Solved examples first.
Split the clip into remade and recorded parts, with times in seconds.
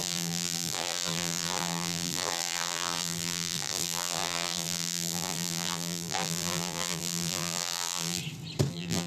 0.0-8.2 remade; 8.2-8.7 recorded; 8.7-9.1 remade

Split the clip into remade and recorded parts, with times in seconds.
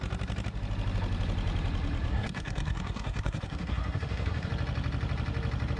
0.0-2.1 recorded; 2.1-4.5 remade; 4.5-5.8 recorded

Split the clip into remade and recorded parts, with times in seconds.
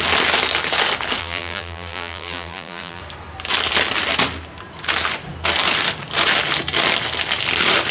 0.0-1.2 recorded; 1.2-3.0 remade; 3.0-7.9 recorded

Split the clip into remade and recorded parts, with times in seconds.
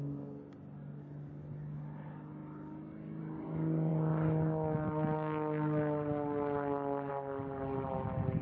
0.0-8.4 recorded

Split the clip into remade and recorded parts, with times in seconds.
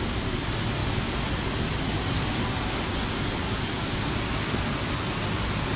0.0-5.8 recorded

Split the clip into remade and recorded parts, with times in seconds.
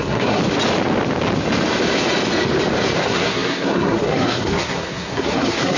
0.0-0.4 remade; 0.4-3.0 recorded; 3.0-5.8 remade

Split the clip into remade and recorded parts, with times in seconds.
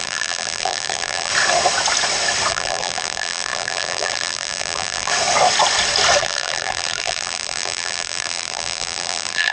0.0-1.3 remade; 1.3-2.5 recorded; 2.5-5.1 remade; 5.1-6.2 recorded; 6.2-9.5 remade